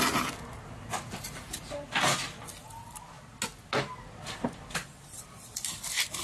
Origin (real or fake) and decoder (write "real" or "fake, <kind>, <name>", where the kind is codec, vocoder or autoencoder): real